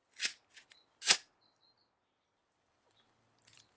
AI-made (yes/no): no